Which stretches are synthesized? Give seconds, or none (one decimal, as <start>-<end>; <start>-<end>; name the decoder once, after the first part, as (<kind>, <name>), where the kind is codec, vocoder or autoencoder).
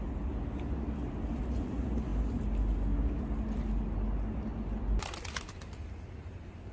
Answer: none